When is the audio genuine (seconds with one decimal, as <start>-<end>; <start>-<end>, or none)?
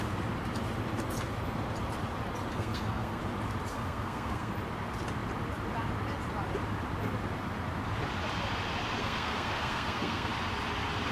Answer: 0.0-2.5; 3.2-3.7; 4.5-9.0; 10.3-11.1